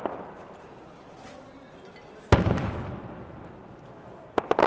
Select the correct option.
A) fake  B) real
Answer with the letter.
B